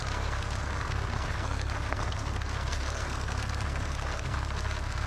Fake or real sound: fake